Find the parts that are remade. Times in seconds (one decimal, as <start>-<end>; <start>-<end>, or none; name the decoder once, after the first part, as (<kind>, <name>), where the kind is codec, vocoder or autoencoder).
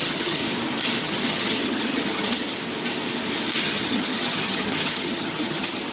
0.0-0.4 (vocoder, HiFi-GAN); 1.0-2.6; 3.6-5.9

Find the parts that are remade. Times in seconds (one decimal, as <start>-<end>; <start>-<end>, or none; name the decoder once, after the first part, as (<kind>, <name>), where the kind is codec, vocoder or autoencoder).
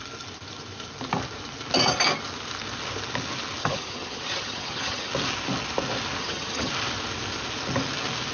3.6-5.1 (vocoder, HiFi-GAN); 6.2-6.7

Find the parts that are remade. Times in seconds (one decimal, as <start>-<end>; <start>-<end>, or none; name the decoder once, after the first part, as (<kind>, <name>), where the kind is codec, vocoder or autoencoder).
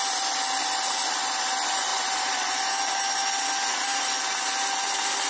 none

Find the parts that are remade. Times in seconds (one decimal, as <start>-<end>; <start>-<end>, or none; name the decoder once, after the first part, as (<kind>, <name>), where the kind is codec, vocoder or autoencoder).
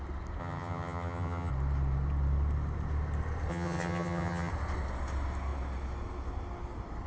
0.4-1.5 (vocoder, HiFi-GAN); 3.5-4.5